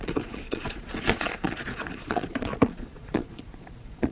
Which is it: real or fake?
fake